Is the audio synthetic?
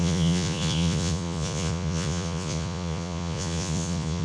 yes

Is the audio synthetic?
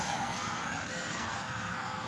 yes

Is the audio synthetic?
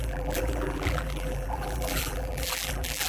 yes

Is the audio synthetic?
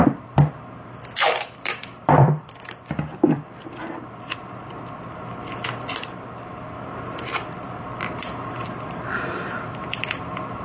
yes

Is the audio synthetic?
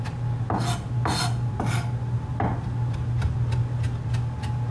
no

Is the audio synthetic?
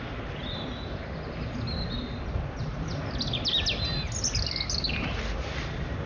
no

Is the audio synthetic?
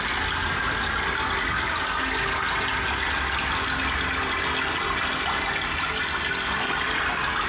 no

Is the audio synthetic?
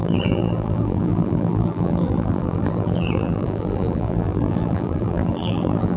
yes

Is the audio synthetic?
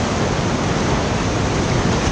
no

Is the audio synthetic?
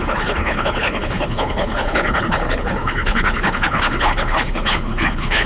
yes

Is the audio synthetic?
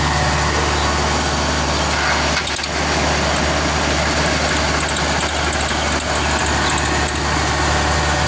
no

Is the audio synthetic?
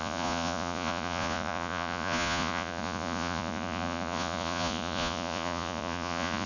yes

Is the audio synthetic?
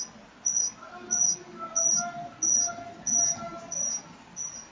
no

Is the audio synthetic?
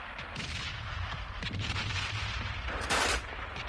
yes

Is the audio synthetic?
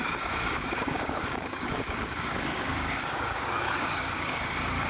yes